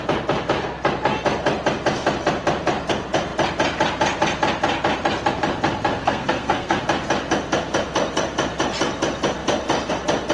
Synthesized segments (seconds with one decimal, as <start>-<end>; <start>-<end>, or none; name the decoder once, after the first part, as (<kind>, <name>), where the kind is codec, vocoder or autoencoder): 6.0-6.8 (codec, SNAC)